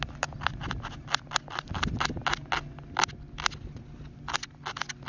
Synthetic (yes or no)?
no